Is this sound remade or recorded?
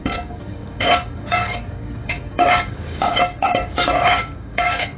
remade